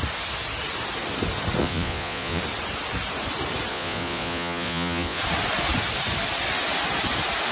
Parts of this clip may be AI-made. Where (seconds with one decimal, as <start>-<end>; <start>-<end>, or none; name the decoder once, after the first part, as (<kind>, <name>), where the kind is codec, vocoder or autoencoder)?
1.6-2.4 (vocoder, Vocos); 3.7-5.2